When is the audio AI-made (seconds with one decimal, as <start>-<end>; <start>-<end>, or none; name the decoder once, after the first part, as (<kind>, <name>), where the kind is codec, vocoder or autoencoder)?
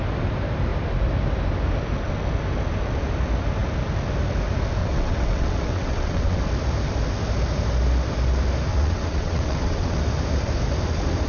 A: 4.8-6.4 (vocoder, WaveNeXt); 8.7-10.0